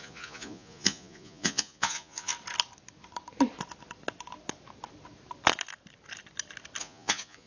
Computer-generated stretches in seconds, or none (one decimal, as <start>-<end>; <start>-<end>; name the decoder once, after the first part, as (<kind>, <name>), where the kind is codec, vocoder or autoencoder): 0.0-2.3 (vocoder, Vocos); 6.8-7.5